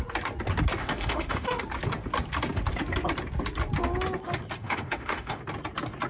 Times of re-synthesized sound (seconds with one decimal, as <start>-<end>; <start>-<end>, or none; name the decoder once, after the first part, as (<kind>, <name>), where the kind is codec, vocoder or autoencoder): 0.8-1.6 (autoencoder, DAC-VAE); 4.6-5.4